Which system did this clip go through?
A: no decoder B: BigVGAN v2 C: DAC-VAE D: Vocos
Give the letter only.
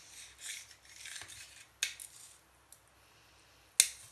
A